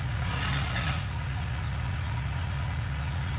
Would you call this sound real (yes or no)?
no